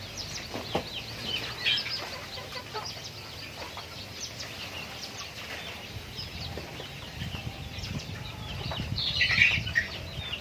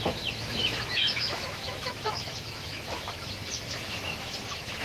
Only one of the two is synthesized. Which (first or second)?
second